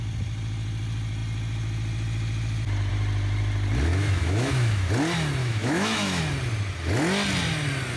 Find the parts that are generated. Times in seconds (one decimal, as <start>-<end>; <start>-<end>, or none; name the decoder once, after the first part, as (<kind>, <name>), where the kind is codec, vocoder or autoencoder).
3.9-4.9 (autoencoder, DAC-VAE); 5.4-6.2